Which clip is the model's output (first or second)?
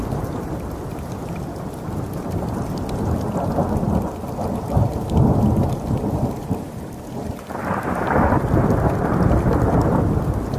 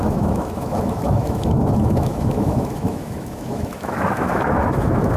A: second